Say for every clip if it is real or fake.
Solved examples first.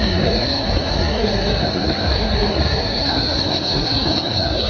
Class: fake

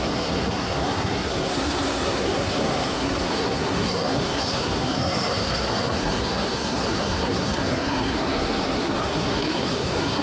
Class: fake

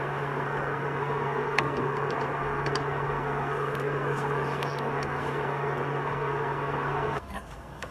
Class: fake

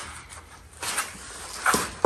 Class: real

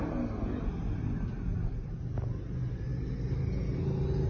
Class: real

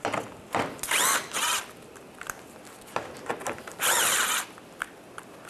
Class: real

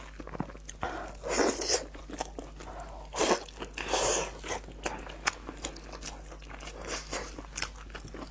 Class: real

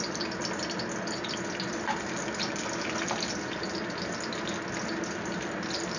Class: real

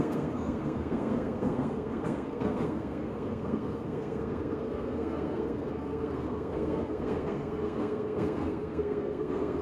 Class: fake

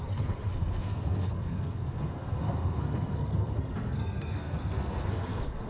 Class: fake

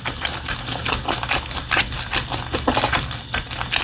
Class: real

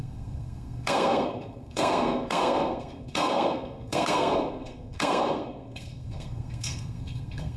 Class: fake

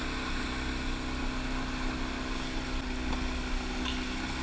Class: real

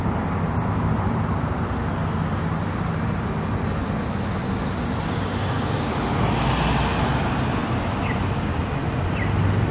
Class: real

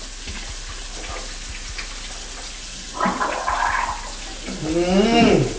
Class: real